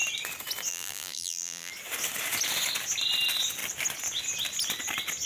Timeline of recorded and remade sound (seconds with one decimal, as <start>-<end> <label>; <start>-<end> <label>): 0.0-0.7 recorded; 0.7-1.7 remade; 1.7-5.3 recorded